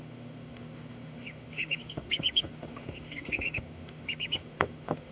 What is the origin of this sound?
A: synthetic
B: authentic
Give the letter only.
A